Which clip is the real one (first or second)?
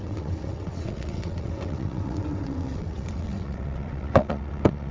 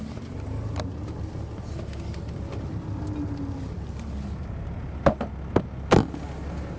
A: second